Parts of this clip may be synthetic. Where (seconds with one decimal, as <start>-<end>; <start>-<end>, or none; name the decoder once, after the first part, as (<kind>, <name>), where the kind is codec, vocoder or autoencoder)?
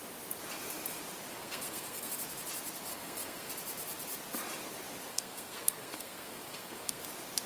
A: 1.3-2.1 (codec, SNAC); 2.9-3.5; 5.1-7.0